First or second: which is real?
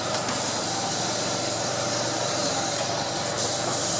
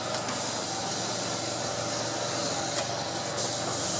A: second